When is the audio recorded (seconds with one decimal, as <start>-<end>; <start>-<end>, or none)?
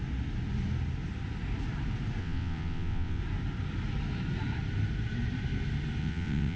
0.0-2.2; 3.2-6.0